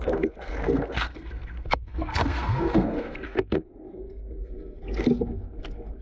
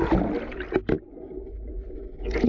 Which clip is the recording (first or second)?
second